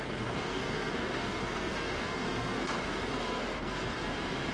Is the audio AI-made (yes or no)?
yes